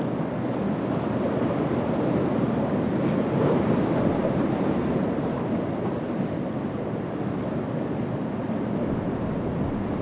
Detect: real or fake real